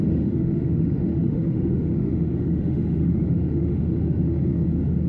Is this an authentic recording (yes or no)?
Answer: no